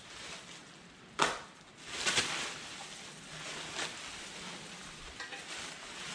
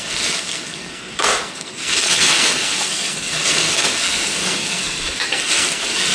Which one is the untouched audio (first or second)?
first